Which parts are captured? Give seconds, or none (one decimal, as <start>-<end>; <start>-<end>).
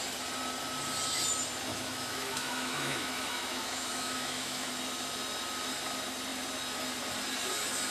0.0-1.7; 4.7-7.9